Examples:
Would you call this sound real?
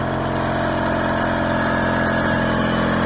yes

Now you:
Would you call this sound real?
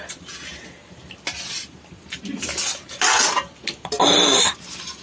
yes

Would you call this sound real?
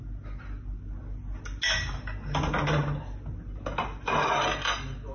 yes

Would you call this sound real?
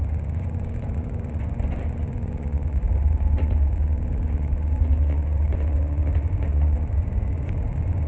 no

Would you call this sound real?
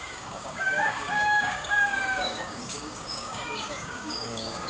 no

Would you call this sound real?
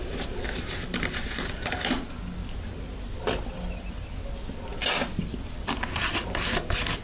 yes